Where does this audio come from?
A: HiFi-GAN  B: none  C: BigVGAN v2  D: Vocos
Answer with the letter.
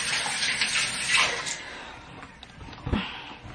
B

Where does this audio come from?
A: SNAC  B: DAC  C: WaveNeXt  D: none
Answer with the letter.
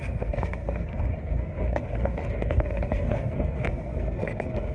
A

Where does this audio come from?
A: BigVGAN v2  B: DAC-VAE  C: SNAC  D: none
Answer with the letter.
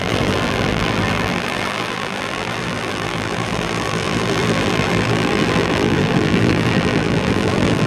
A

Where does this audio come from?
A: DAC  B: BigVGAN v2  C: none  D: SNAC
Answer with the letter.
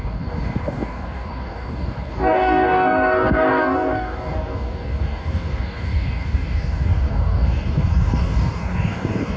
A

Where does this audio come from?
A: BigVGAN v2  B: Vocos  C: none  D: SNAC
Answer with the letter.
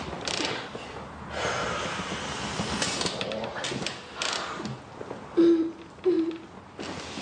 C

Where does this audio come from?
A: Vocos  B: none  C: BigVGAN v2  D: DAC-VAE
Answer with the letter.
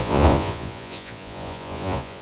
A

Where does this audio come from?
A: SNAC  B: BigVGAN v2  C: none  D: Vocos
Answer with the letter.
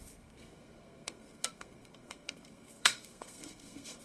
A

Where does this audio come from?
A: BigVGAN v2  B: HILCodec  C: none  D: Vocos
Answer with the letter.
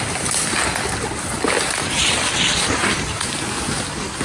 C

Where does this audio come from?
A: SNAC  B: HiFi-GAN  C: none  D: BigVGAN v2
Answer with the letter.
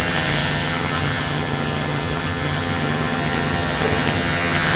B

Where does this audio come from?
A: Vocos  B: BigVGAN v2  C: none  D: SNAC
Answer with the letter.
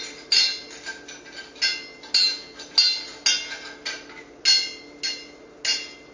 C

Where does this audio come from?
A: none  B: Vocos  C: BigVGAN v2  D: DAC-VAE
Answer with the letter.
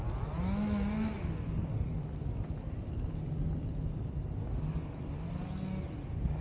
A